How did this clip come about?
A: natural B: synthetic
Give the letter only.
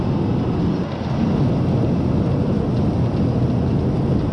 A